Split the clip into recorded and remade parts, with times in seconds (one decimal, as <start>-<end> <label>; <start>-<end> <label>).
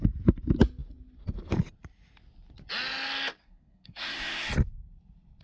0.0-3.4 recorded; 3.4-4.5 remade; 4.5-5.4 recorded